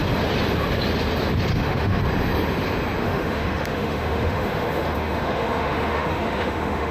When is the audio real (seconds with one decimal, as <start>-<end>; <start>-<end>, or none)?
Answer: 0.0-1.5; 2.0-3.0